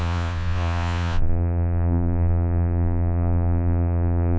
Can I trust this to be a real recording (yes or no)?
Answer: no